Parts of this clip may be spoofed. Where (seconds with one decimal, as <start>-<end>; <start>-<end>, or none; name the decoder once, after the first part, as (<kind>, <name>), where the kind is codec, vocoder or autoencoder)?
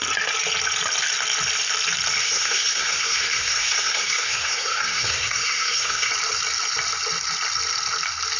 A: 2.2-6.1 (codec, SNAC)